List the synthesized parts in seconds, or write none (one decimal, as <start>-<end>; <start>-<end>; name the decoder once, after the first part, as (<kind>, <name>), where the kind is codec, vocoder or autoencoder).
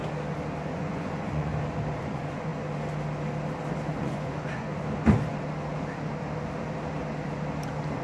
0.7-1.5 (vocoder, Vocos); 2.0-2.5; 4.0-4.7